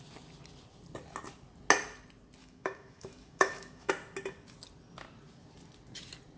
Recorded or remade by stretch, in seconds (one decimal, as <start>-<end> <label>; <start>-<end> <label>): 0.0-2.4 recorded; 2.4-3.9 remade; 3.9-6.4 recorded